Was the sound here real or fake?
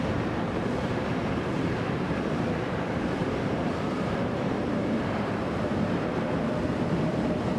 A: fake